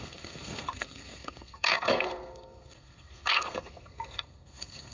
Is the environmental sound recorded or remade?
remade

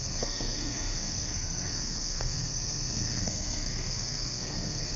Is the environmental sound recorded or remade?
remade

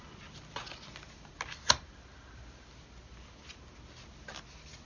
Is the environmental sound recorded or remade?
recorded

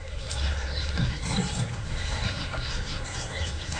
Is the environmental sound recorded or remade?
remade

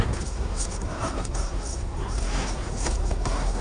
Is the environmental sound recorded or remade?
remade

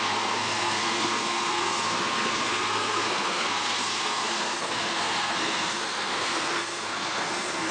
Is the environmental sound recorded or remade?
remade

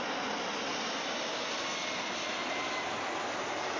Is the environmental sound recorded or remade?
recorded